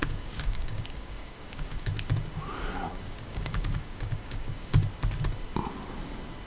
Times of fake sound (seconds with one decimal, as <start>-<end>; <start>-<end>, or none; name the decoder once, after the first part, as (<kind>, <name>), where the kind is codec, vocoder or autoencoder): 0.0-1.9 (codec, DAC); 2.9-4.7